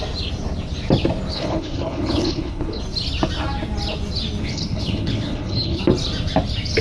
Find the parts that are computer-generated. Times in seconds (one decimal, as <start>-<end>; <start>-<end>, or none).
1.3-2.8; 4.4-5.8